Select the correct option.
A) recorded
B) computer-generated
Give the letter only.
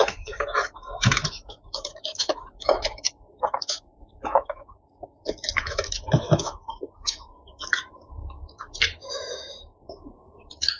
B